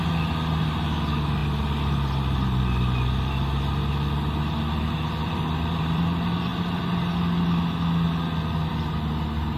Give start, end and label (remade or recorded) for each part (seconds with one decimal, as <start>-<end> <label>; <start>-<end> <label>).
0.0-5.2 recorded; 5.2-6.0 remade; 6.0-9.6 recorded